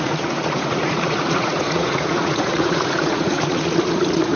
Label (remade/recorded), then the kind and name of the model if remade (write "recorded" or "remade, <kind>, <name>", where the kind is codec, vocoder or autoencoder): remade, vocoder, Vocos